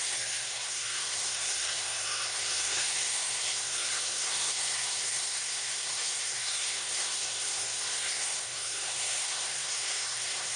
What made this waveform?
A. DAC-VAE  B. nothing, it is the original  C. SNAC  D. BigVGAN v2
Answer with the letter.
C